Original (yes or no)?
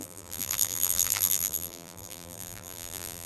no